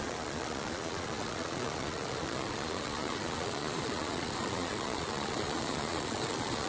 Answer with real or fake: fake